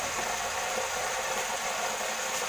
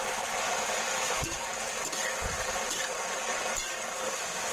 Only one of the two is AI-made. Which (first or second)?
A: second